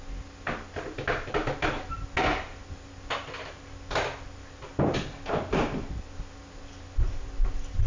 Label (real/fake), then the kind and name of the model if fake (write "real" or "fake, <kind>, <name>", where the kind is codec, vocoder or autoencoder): real